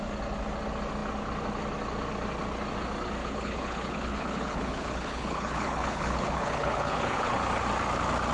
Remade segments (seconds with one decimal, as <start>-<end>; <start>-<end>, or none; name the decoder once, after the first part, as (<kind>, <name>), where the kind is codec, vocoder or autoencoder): 3.2-7.4 (codec, HILCodec)